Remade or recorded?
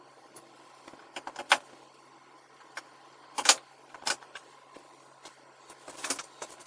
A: recorded